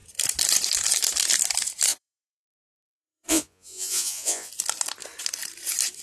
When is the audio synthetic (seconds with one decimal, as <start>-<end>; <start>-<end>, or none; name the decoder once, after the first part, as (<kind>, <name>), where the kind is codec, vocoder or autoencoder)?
1.9-4.5 (vocoder, Vocos)